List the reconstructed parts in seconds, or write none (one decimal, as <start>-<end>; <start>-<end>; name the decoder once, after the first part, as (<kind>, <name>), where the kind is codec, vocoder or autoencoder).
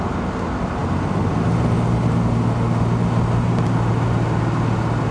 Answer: none